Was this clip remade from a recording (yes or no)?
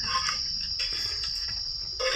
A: no